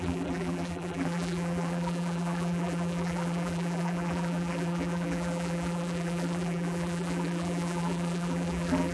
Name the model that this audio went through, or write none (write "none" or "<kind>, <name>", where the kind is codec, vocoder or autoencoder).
vocoder, BigVGAN v2